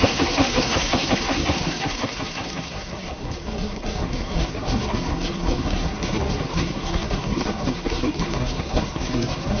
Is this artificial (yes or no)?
yes